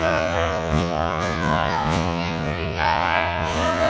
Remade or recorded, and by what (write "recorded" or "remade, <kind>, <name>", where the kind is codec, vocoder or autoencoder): remade, vocoder, Vocos